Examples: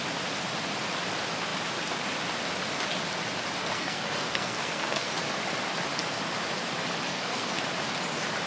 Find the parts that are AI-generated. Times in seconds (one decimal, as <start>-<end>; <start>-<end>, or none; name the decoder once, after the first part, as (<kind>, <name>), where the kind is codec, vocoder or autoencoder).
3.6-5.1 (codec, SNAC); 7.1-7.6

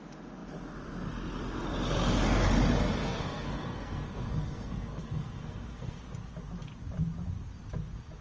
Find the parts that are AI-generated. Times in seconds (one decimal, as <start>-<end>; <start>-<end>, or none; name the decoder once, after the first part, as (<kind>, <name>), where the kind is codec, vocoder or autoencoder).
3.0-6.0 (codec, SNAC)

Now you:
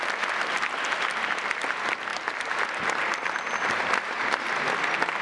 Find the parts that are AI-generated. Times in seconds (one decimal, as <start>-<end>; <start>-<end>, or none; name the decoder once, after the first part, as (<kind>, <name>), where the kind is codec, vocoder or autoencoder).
none